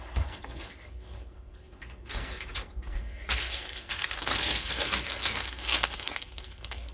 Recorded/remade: remade